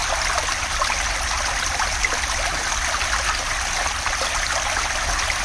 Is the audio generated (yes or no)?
no